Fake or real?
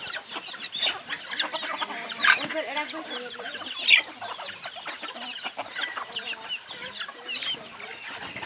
real